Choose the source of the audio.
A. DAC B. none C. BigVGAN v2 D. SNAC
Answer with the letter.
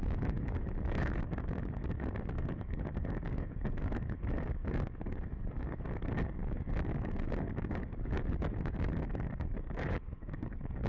A